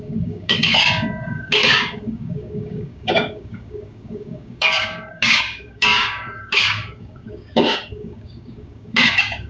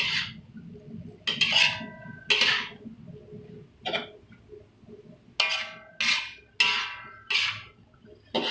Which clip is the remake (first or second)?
first